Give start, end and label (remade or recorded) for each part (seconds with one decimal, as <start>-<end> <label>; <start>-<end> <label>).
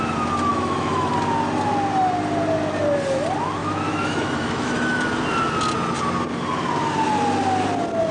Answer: 0.0-0.5 recorded; 0.5-1.1 remade; 1.1-3.6 recorded; 3.6-5.0 remade; 5.0-8.1 recorded